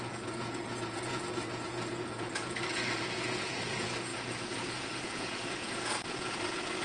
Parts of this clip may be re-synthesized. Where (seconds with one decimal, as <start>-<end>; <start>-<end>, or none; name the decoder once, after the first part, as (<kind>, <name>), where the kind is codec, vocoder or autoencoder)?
0.0-6.8 (vocoder, Vocos)